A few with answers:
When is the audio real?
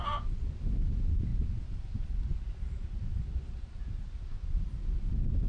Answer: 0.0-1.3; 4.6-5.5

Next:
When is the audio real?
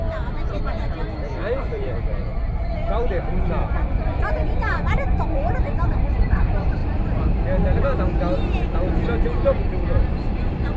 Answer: 2.3-4.0; 6.8-9.6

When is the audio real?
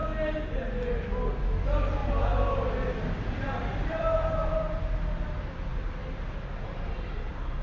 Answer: 0.0-2.0; 4.5-7.6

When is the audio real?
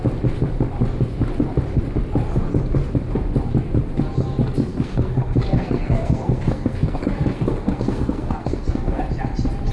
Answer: 0.0-4.7; 9.0-9.7